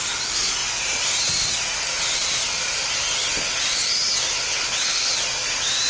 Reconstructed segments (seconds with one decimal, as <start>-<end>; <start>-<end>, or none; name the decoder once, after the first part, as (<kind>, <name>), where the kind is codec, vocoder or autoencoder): 4.5-5.1 (codec, HILCodec)

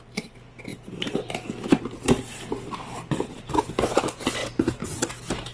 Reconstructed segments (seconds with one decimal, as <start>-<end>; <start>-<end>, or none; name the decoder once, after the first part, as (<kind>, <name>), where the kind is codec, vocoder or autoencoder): none

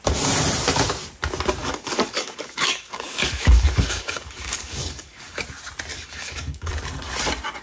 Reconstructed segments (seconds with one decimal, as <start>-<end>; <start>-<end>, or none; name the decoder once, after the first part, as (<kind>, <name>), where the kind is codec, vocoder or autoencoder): 1.6-5.4 (codec, DAC); 5.9-6.7

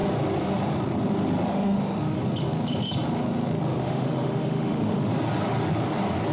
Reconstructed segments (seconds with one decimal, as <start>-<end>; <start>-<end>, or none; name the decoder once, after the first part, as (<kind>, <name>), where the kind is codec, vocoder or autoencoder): 1.5-2.2 (autoencoder, DAC-VAE); 3.8-5.1